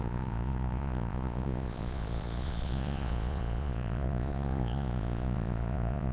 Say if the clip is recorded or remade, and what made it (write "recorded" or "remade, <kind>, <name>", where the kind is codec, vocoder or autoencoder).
remade, vocoder, Vocos